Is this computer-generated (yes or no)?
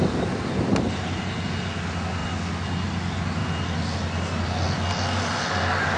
no